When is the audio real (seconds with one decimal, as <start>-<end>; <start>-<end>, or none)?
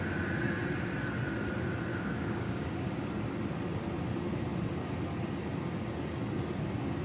0.0-1.9; 3.1-7.0